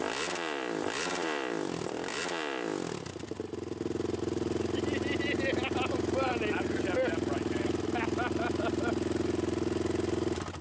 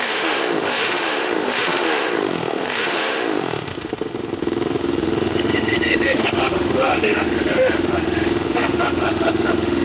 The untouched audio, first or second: first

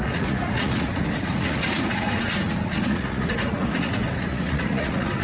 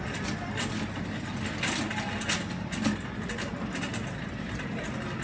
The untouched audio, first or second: second